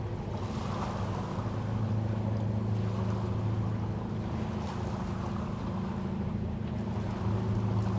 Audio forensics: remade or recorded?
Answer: recorded